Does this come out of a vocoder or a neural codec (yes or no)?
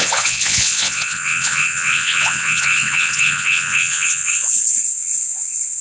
yes